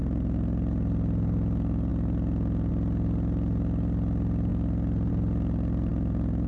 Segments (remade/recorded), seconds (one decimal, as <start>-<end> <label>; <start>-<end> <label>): 0.0-6.5 recorded